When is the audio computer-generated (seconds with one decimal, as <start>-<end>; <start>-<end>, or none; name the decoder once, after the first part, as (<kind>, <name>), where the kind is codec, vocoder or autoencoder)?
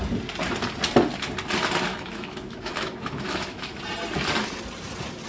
1.9-3.8 (autoencoder, DAC-VAE)